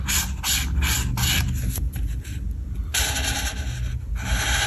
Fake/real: real